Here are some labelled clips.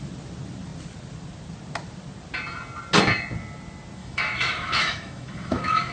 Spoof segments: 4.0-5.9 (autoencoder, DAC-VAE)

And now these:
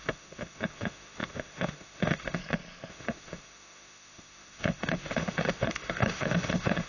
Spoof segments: 0.0-2.4 (autoencoder, DAC-VAE); 2.9-6.9

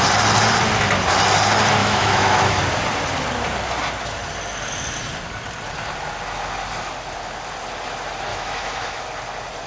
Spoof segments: 1.8-2.6 (autoencoder, DAC-VAE); 8.3-9.0

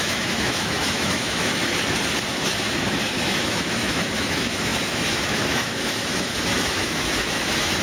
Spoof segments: 0.0-1.6 (autoencoder, DAC-VAE); 2.3-7.8

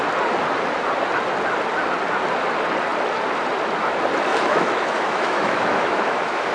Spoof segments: 4.3-6.5 (autoencoder, DAC-VAE)